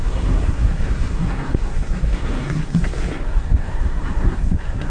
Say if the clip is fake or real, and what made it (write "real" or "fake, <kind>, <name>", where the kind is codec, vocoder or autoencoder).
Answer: fake, codec, SNAC